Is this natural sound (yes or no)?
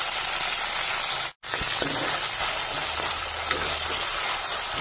yes